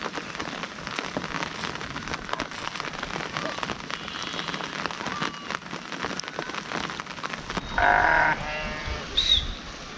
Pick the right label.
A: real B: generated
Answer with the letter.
A